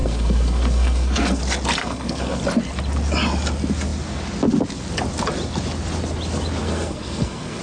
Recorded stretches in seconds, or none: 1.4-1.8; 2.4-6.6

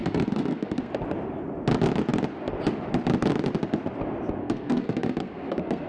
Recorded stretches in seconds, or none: 0.9-4.4